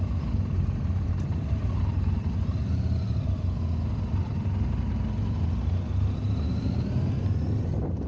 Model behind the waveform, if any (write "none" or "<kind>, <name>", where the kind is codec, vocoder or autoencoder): none